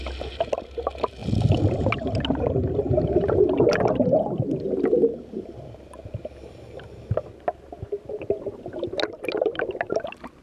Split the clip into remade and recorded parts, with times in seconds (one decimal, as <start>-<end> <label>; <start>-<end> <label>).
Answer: 0.0-10.4 recorded